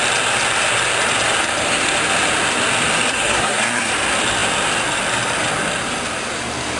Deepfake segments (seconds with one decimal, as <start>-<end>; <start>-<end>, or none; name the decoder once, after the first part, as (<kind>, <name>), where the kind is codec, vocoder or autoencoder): 3.1-3.9 (codec, SNAC)